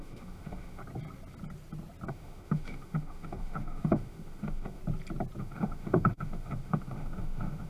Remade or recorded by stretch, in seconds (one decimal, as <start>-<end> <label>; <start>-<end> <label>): 0.0-0.8 remade; 0.8-2.1 recorded; 2.1-4.8 remade; 4.8-5.4 recorded; 5.4-7.7 remade